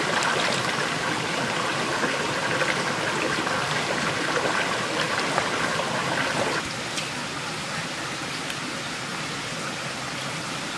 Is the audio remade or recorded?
recorded